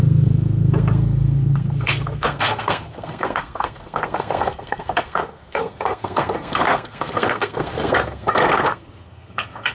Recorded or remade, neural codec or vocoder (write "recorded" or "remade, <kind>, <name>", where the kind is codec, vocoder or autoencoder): remade, codec, SNAC